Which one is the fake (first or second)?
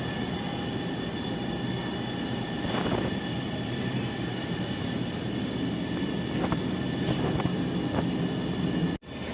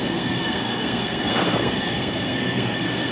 second